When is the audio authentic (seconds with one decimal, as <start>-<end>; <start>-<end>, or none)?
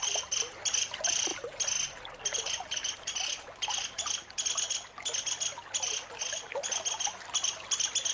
0.0-8.1